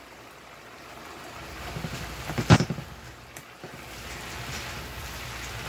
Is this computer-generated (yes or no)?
no